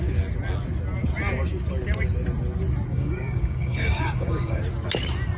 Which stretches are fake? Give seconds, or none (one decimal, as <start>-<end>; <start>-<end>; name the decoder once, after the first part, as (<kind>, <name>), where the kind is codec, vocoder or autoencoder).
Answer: 2.9-4.6 (codec, DAC)